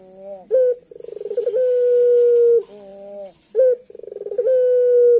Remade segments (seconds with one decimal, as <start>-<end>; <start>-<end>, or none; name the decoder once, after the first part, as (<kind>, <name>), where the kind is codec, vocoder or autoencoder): none